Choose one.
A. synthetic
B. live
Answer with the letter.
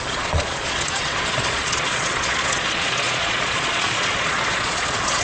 A